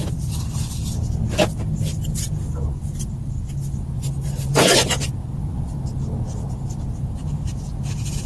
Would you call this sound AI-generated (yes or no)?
no